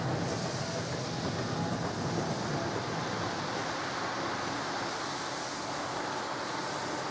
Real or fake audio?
real